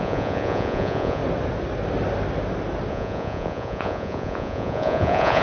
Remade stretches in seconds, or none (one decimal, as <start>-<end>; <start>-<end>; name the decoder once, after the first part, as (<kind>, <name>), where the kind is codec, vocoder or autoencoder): 0.0-1.2 (vocoder, Vocos); 2.9-5.4

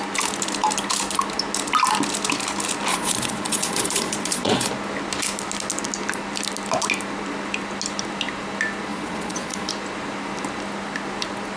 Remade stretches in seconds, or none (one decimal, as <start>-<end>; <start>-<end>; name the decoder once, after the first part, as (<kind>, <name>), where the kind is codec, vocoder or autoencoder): 2.9-4.7 (vocoder, Vocos); 8.9-9.7